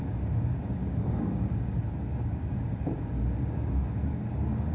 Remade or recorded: remade